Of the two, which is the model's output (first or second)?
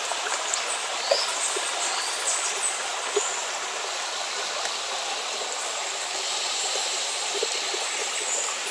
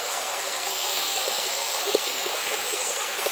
second